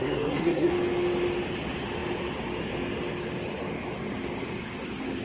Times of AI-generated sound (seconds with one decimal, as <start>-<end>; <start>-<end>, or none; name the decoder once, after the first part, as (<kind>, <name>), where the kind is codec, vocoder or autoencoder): 0.0-0.7 (codec, SNAC)